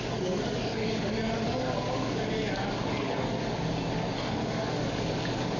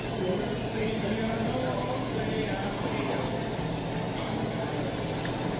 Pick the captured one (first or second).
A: second